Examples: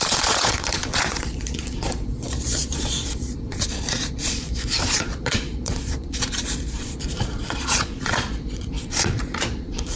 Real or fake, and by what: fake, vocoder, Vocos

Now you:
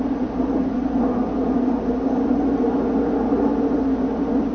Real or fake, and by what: real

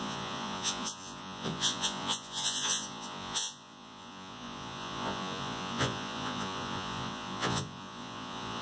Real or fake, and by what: fake, vocoder, Vocos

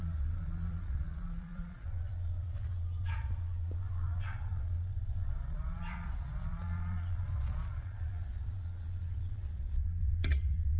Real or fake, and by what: fake, vocoder, Vocos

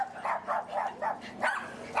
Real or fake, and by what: real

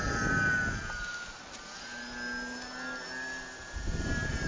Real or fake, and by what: real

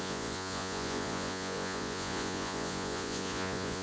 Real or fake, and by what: fake, vocoder, Vocos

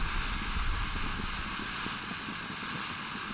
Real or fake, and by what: real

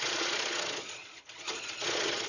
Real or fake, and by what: fake, vocoder, Vocos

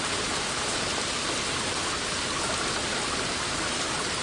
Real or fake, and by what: real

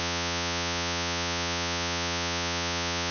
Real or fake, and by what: fake, vocoder, Vocos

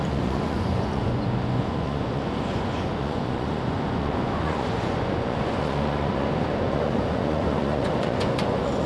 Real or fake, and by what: fake, vocoder, Vocos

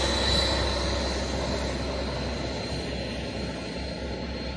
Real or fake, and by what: real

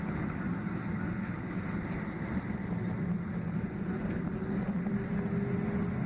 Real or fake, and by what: real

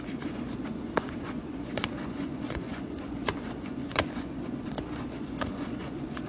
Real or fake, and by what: fake, vocoder, Vocos